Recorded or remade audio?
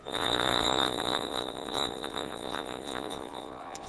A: remade